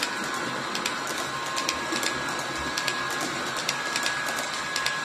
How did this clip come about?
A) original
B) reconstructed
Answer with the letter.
A